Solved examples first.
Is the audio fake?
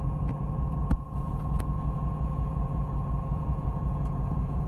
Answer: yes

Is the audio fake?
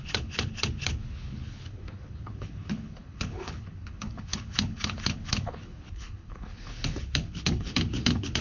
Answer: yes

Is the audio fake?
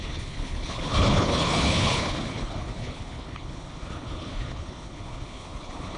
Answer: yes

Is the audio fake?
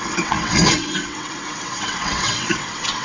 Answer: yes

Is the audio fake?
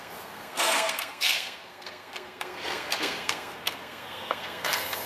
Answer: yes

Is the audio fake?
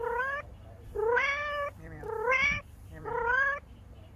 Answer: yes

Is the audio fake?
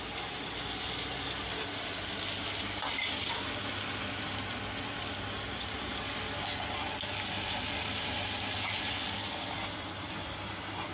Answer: no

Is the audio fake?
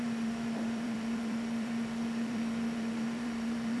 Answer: yes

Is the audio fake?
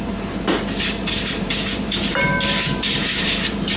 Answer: yes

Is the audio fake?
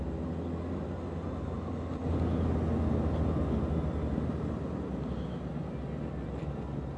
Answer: no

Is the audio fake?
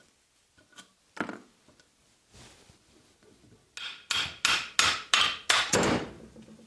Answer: no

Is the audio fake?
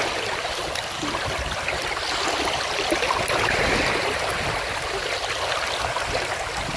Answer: no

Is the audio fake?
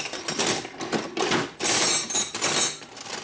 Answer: no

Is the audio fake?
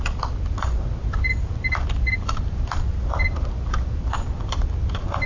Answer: no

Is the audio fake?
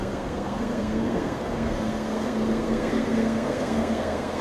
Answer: yes